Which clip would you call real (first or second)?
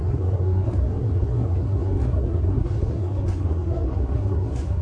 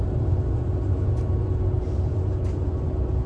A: second